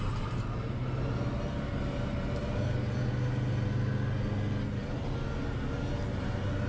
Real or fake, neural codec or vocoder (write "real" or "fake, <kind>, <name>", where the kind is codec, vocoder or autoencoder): real